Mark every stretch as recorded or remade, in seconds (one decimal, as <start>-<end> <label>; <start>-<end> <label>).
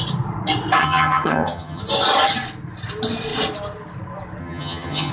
0.0-0.8 recorded; 0.8-1.8 remade; 1.8-4.4 recorded; 4.4-5.1 remade